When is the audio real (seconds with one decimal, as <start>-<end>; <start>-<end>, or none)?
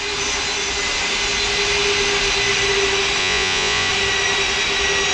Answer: 0.0-3.2; 3.9-5.1